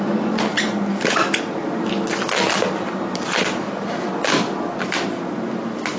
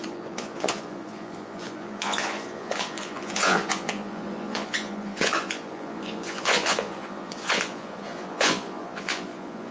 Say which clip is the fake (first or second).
second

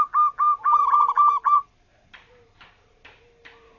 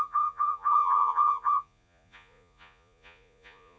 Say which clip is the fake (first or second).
second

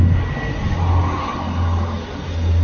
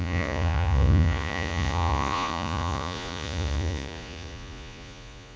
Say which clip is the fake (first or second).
second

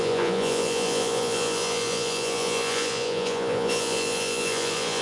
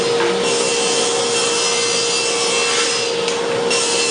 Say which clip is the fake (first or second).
first